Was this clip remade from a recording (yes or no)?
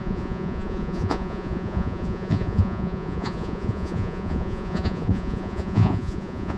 yes